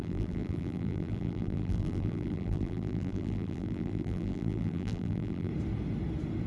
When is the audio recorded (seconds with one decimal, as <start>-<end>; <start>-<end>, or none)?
5.5-6.5